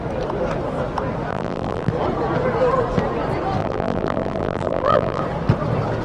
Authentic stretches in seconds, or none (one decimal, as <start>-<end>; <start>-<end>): 0.0-1.3; 1.9-3.6; 5.2-6.0